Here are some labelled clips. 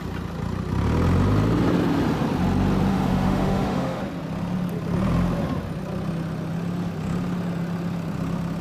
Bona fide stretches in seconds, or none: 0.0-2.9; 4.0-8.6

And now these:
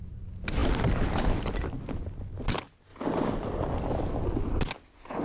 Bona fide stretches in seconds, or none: 0.0-5.2